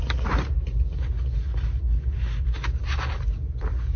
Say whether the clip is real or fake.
real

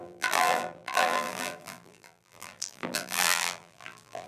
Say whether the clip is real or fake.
fake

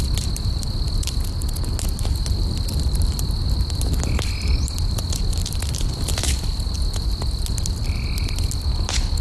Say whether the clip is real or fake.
real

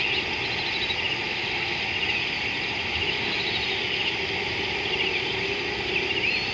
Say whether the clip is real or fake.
real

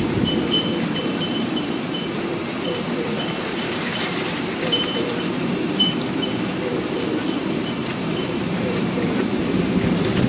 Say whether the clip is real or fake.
fake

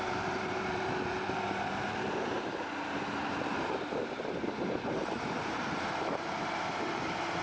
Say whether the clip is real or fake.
fake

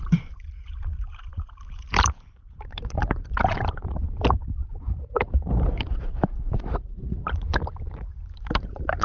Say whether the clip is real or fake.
fake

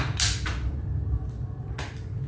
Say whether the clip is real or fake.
real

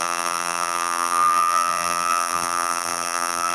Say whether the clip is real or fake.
fake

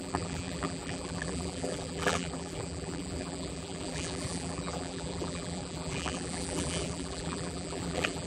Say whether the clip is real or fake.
fake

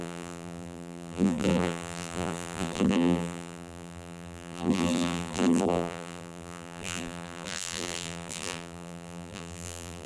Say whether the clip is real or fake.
fake